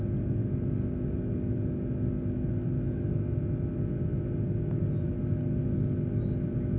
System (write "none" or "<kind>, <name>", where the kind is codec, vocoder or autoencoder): none